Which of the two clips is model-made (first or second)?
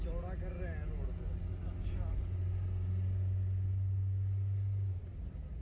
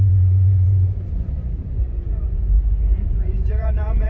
second